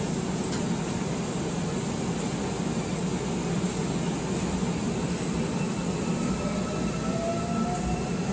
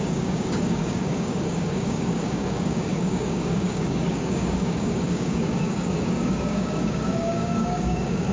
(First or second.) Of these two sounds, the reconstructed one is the second